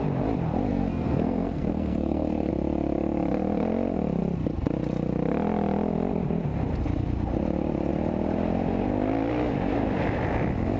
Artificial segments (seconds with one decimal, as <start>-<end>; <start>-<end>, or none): 0.7-2.5